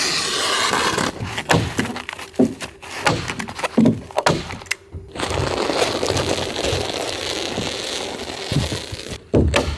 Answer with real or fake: real